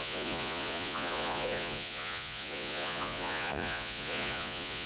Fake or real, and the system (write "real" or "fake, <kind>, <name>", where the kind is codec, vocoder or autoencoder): fake, vocoder, Vocos